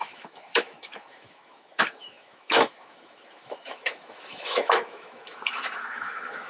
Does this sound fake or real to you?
fake